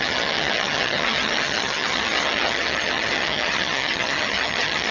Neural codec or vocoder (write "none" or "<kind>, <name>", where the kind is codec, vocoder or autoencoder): vocoder, HiFi-GAN